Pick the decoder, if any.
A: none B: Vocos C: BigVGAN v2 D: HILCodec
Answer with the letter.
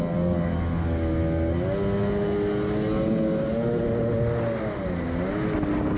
A